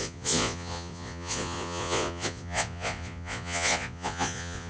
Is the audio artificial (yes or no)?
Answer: yes